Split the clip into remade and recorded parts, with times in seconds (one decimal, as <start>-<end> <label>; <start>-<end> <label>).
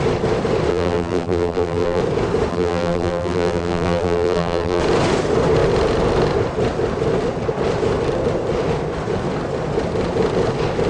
0.0-0.7 recorded; 0.7-2.0 remade; 2.0-2.5 recorded; 2.5-4.8 remade; 4.8-10.9 recorded